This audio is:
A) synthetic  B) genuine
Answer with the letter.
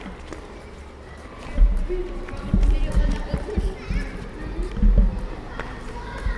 B